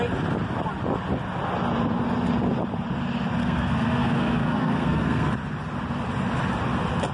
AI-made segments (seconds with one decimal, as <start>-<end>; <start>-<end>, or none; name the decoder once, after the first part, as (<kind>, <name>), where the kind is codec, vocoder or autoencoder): 3.4-5.3 (codec, SNAC)